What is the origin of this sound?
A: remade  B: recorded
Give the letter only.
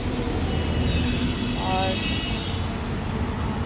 B